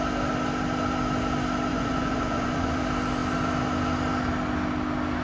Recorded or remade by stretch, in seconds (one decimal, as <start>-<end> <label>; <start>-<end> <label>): 0.0-1.7 recorded; 1.7-2.8 remade; 2.8-5.2 recorded